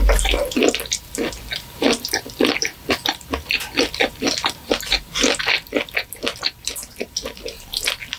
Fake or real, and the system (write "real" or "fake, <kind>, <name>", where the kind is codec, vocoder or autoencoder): real